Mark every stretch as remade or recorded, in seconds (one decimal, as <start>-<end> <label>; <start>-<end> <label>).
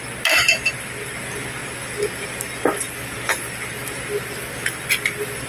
0.0-5.5 recorded